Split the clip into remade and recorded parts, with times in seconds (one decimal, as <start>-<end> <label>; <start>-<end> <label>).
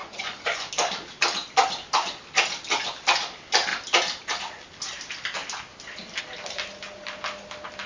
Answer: 0.0-0.7 remade; 0.7-7.9 recorded